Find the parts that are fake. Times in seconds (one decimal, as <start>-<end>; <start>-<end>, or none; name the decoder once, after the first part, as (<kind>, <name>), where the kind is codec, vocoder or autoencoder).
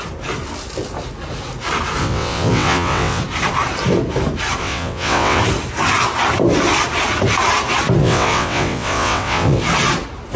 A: 2.0-3.2 (vocoder, WaveNeXt); 4.6-5.4; 8.0-9.6